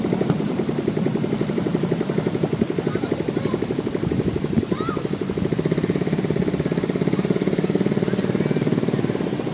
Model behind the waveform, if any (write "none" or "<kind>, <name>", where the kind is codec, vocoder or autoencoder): none